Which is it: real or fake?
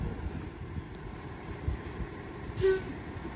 real